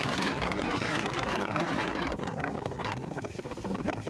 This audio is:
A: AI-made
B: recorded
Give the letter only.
A